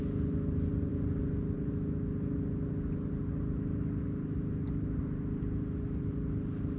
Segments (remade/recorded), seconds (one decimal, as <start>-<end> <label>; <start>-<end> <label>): 0.0-6.8 recorded